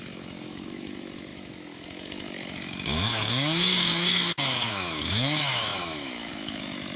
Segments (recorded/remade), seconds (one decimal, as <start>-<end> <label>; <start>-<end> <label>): 0.0-7.0 remade